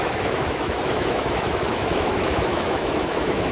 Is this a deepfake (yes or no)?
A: yes